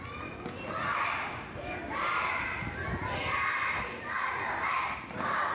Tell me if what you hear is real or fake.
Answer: fake